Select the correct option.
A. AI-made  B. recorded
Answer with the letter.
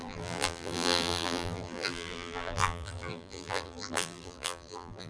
A